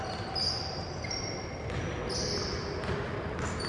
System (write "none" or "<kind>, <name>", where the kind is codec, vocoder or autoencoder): none